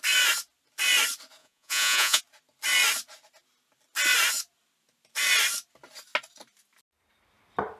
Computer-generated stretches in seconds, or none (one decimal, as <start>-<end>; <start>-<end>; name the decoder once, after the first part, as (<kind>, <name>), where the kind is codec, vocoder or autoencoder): 1.4-2.2 (vocoder, Vocos)